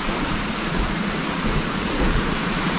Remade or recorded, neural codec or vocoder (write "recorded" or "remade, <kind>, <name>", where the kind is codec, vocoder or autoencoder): remade, vocoder, Vocos